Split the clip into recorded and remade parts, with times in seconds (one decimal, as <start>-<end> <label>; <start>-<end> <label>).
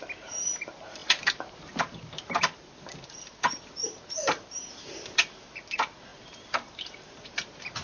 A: 0.0-7.8 remade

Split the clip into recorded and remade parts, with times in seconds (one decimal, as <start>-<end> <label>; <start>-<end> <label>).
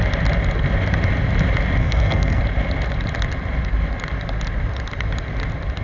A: 0.0-1.8 recorded; 1.8-2.4 remade; 2.4-5.8 recorded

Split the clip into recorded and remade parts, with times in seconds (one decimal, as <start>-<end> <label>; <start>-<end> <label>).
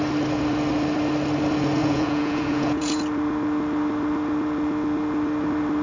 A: 0.0-1.8 recorded; 1.8-3.0 remade; 3.0-5.8 recorded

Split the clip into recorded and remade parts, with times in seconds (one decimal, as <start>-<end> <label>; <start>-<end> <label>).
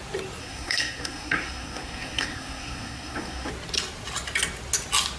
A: 0.0-0.4 recorded; 0.4-3.5 remade; 3.5-5.2 recorded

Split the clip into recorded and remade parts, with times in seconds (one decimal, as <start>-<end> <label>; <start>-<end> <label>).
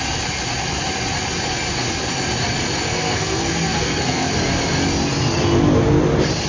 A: 0.0-2.9 recorded; 2.9-4.3 remade; 4.3-6.5 recorded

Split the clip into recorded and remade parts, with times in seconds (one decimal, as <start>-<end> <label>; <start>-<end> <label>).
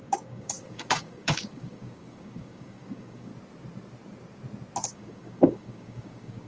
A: 0.0-3.3 remade; 3.3-4.9 recorded; 4.9-6.5 remade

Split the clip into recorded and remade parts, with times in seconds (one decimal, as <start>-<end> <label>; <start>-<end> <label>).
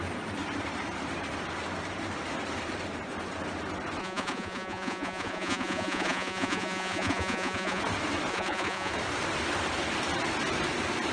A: 0.0-4.0 recorded; 4.0-7.8 remade; 7.8-8.3 recorded; 8.3-8.9 remade; 8.9-11.1 recorded